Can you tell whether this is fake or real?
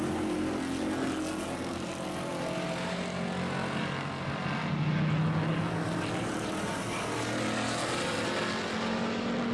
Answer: real